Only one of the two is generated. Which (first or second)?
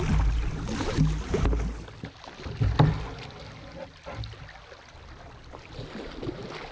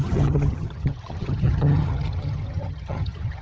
second